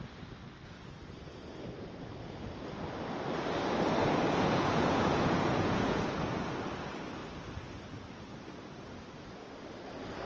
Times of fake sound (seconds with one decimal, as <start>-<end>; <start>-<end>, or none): 4.0-6.0